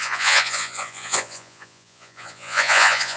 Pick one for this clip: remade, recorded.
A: remade